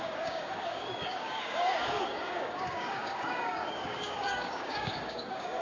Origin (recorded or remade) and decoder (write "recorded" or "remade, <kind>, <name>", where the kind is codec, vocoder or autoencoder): remade, codec, DAC